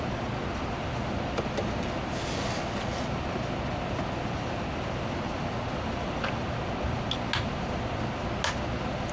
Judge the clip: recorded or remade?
recorded